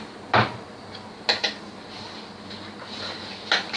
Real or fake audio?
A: real